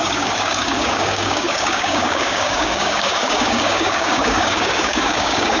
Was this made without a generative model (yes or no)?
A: no